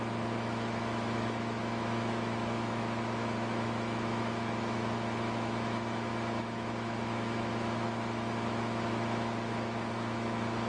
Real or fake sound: fake